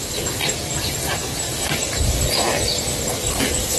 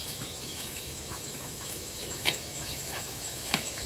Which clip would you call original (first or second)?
first